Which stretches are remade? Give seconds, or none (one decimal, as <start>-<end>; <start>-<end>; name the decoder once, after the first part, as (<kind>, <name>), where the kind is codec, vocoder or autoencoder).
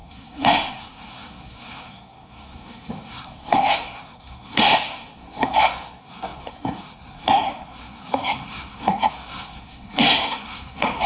0.0-11.1 (codec, SNAC)